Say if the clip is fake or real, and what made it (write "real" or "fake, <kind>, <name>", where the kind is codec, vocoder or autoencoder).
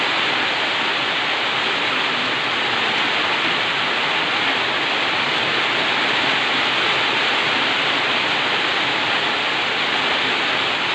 real